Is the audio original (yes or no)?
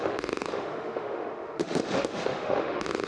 no